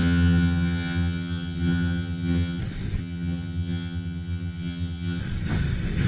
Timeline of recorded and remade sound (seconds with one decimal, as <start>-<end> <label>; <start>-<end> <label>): 0.0-2.6 remade; 2.6-3.0 recorded; 3.0-5.2 remade; 5.2-6.1 recorded